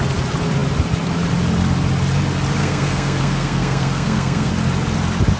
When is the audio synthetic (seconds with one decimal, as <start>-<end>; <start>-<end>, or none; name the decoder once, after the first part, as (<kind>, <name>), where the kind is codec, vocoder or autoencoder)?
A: 2.6-4.5 (codec, SNAC)